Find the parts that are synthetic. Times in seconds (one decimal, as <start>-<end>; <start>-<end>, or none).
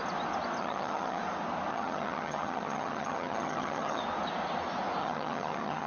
0.6-1.2; 1.7-4.0; 5.0-5.9